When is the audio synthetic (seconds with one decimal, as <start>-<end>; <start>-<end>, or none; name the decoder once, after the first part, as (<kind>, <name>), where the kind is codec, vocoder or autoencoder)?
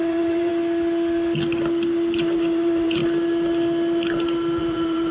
0.0-0.5 (vocoder, Vocos); 2.2-3.0; 4.6-5.1